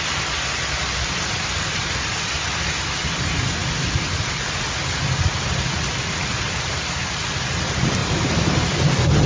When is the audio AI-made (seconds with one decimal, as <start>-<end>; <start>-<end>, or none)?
none